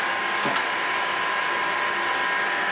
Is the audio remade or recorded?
recorded